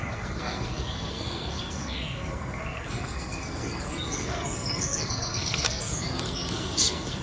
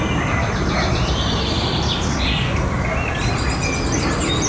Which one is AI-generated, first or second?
first